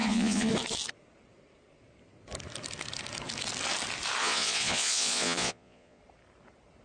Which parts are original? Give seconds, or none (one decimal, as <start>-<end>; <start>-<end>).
0.5-4.2; 6.0-6.8